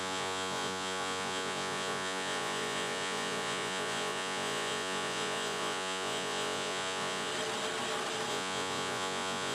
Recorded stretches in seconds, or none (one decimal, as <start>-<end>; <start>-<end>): 7.3-8.3